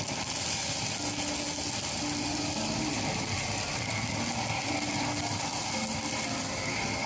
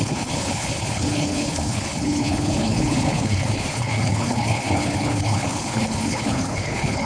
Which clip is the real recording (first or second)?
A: first